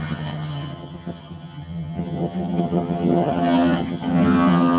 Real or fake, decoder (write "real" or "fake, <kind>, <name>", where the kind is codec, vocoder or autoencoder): fake, vocoder, HiFi-GAN